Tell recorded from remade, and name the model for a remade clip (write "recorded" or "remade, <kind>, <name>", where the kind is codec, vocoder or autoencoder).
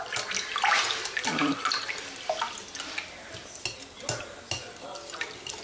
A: recorded